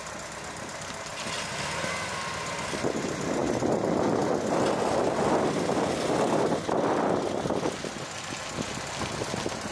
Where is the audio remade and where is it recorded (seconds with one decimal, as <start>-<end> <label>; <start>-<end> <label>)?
0.0-9.7 recorded